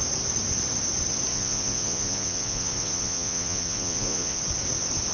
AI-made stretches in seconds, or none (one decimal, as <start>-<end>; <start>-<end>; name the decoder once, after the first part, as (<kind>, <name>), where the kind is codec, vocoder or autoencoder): 1.3-4.4 (vocoder, Vocos)